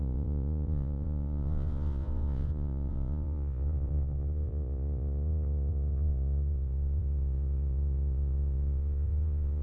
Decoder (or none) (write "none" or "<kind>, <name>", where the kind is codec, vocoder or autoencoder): vocoder, Vocos